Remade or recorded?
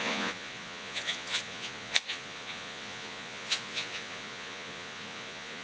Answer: remade